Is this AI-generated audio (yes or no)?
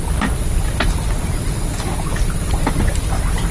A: no